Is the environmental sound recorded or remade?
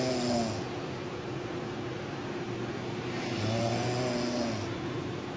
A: recorded